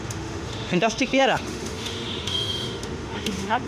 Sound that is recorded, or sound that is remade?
remade